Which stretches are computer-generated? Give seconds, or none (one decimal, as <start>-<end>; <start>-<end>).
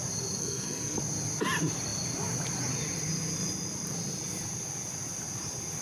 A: 0.4-1.0